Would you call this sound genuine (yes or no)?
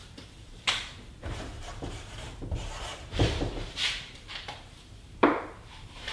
no